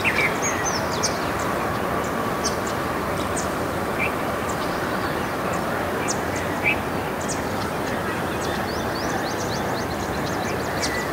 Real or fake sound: real